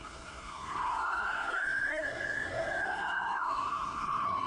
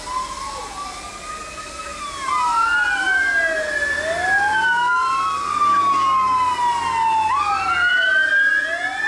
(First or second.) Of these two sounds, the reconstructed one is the first